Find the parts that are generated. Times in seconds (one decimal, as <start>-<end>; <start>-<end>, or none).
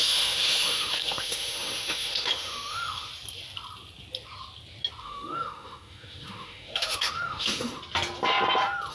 0.0-3.1; 5.0-7.8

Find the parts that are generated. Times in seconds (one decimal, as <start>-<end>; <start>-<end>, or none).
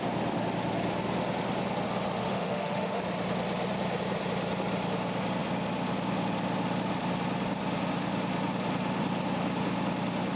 2.2-3.0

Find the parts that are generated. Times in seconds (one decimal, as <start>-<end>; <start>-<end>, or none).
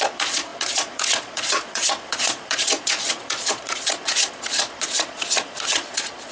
0.0-6.3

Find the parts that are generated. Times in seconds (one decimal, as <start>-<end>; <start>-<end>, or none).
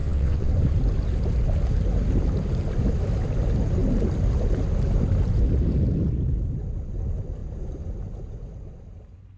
0.0-0.5